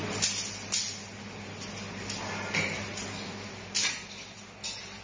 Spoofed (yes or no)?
no